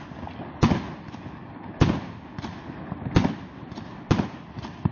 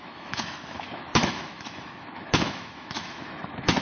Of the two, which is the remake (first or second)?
second